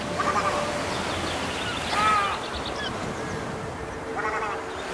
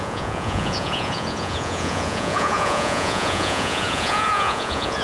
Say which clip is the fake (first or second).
second